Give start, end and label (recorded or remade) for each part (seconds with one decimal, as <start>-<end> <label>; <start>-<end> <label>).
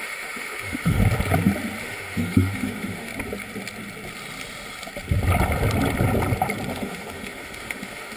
0.0-1.0 remade; 1.0-1.8 recorded; 1.8-3.1 remade; 3.1-6.7 recorded; 6.7-8.2 remade